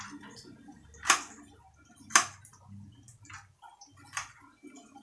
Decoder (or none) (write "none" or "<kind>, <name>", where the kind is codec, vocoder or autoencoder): none